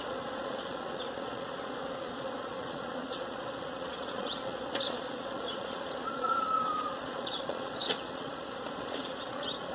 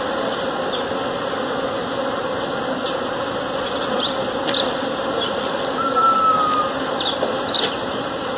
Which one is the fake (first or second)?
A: first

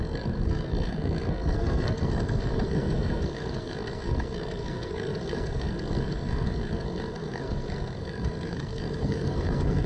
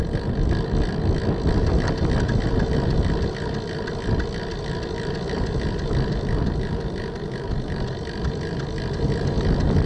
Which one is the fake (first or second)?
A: first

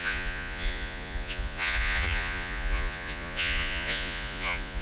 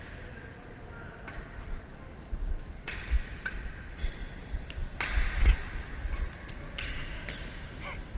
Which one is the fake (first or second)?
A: first